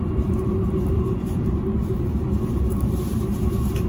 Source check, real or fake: fake